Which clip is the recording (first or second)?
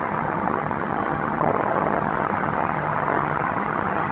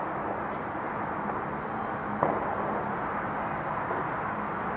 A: second